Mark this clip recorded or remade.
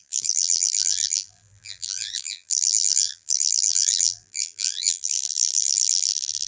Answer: remade